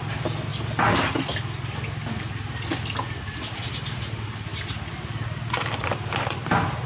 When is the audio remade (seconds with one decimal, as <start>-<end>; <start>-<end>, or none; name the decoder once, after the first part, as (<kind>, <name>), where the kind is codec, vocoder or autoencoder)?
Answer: none

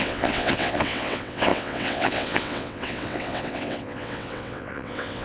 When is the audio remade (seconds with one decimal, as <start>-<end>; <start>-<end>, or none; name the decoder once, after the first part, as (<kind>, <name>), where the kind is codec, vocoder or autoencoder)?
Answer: 0.0-5.2 (vocoder, WaveNeXt)

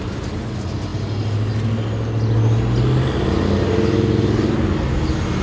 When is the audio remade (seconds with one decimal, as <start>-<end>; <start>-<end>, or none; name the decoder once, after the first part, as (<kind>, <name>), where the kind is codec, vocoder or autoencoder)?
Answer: none

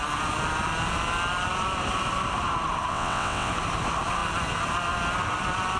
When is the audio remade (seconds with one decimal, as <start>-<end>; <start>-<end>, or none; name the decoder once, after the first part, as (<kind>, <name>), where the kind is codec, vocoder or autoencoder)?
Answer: 2.9-3.5 (vocoder, WaveNeXt)

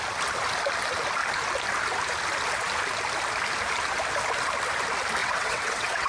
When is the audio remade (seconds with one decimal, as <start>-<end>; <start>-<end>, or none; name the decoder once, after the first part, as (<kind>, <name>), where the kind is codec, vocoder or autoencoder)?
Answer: 5.2-6.1 (vocoder, WaveNeXt)